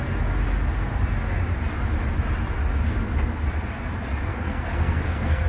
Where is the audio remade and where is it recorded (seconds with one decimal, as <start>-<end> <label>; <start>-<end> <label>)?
0.0-4.3 recorded; 4.3-5.5 remade